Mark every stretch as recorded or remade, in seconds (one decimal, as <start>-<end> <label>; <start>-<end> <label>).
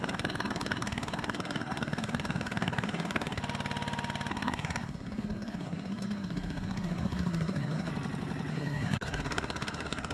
0.0-3.4 remade; 3.4-4.3 recorded; 4.3-7.9 remade; 7.9-8.5 recorded; 8.5-10.1 remade